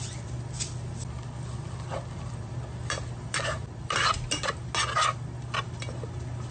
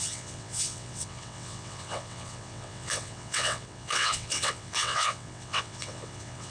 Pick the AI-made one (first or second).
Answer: second